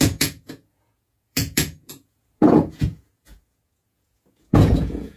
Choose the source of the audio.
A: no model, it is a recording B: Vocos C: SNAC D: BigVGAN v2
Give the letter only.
B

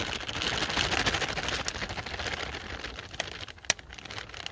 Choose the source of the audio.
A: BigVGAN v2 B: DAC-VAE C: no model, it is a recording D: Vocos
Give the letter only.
C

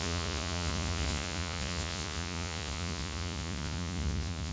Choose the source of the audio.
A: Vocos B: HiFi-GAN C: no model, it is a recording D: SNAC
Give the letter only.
A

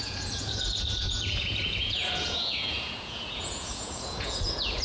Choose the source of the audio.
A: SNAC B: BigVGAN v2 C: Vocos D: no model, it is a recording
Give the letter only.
C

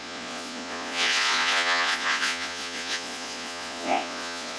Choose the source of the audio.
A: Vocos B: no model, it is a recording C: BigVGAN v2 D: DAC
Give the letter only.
A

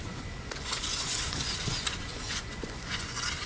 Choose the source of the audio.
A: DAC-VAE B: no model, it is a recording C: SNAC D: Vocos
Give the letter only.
D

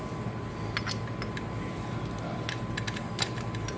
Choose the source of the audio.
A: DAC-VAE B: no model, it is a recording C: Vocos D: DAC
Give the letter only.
B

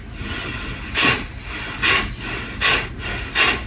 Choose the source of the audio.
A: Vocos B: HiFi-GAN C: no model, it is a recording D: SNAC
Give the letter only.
C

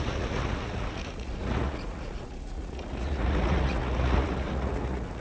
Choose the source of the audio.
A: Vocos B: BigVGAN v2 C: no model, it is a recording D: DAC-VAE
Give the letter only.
A